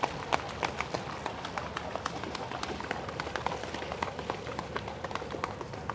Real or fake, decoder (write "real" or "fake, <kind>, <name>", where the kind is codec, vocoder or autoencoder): real